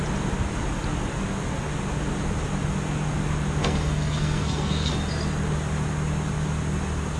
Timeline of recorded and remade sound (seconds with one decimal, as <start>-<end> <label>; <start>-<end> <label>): 0.0-3.6 recorded; 3.6-4.9 remade; 4.9-7.2 recorded